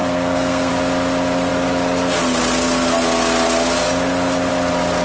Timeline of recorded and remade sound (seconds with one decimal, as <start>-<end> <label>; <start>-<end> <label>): 0.0-0.7 remade; 0.7-5.0 recorded